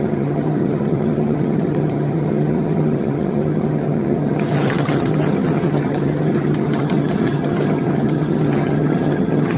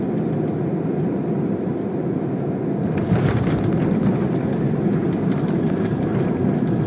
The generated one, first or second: first